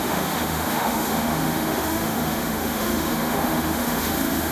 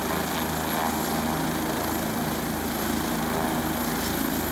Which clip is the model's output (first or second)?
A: first